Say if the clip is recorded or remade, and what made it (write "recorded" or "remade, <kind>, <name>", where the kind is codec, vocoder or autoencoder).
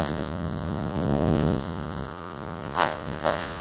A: remade, vocoder, Vocos